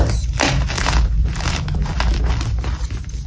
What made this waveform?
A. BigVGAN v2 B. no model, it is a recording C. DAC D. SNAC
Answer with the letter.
B